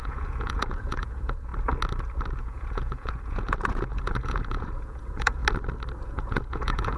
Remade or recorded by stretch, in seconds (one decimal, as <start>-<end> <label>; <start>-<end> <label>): 0.0-1.5 remade; 1.5-2.4 recorded; 2.4-5.4 remade; 5.4-6.0 recorded; 6.0-7.0 remade

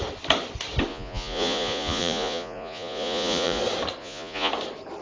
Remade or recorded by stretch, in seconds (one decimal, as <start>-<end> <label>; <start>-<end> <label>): 0.0-0.9 recorded; 0.9-3.6 remade; 3.6-4.0 recorded; 4.0-4.5 remade; 4.5-5.0 recorded

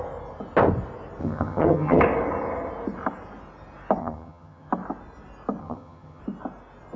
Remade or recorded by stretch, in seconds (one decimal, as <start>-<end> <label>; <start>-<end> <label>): 0.0-1.2 recorded; 1.2-2.0 remade; 2.0-4.0 recorded; 4.0-4.7 remade; 4.7-5.6 recorded; 5.6-6.2 remade; 6.2-7.0 recorded

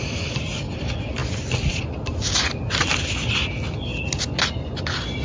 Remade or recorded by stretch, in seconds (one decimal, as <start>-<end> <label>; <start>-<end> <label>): 0.0-5.2 recorded

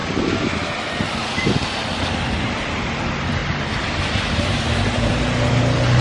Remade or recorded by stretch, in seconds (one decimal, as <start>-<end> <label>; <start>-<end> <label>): 0.0-3.4 recorded; 3.4-5.2 remade; 5.2-6.0 recorded

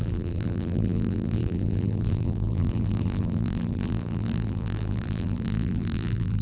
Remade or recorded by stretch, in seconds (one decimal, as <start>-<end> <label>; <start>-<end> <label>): 0.0-6.4 remade